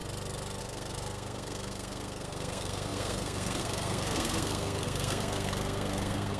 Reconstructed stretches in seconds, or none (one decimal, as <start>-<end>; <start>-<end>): 0.6-6.4